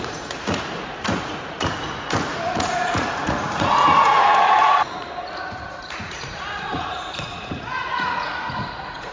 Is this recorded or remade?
remade